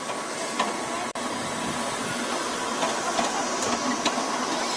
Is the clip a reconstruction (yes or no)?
no